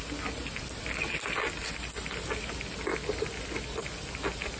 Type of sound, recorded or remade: recorded